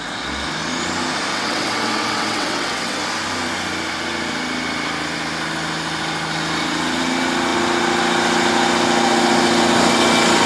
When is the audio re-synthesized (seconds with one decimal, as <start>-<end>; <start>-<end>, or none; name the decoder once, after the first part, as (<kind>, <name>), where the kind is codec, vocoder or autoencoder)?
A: 1.3-3.0 (vocoder, WaveNeXt)